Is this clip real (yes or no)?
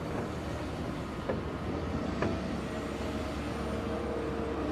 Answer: yes